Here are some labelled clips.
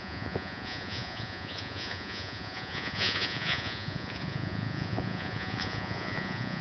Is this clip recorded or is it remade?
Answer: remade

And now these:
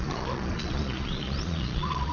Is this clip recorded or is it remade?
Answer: remade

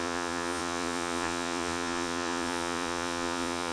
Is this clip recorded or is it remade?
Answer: remade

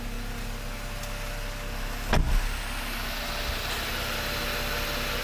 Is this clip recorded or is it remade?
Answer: recorded